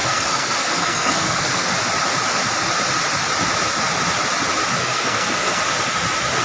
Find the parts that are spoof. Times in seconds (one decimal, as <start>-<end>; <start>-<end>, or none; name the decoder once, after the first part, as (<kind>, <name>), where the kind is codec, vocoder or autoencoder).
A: 0.0-1.7 (codec, SNAC); 4.8-5.6